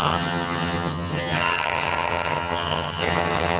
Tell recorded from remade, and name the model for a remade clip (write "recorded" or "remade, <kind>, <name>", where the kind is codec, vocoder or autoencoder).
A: remade, vocoder, HiFi-GAN